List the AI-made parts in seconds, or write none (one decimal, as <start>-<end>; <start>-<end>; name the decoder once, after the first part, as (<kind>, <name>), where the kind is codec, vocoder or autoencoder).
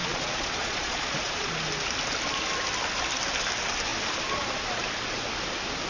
0.0-1.5 (vocoder, Vocos)